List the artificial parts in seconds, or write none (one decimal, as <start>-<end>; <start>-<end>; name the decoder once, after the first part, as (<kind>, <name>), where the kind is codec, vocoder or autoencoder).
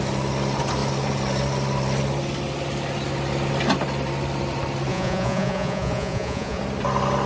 4.9-6.6 (vocoder, Vocos)